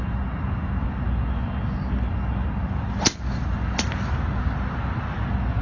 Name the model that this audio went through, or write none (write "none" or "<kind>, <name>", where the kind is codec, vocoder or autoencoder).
none